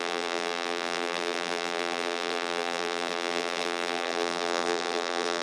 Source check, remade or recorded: remade